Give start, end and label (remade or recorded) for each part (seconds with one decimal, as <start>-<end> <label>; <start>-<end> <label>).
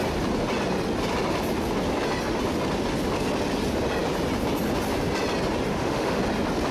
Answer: 0.0-5.7 recorded; 5.7-6.2 remade; 6.2-6.7 recorded